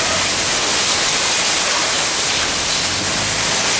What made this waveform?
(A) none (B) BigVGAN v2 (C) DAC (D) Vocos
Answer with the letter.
A